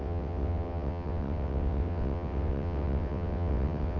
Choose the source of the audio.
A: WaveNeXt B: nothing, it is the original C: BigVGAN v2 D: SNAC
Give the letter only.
A